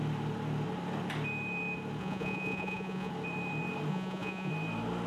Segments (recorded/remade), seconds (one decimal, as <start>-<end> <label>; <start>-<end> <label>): 0.0-2.0 recorded; 2.0-3.1 remade; 3.1-3.9 recorded; 3.9-4.5 remade; 4.5-5.1 recorded